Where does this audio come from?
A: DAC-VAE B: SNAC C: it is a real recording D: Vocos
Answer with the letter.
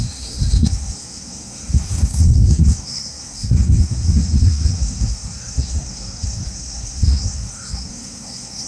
B